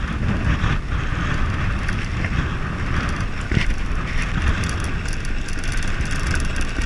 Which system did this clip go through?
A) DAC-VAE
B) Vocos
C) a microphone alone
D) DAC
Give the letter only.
C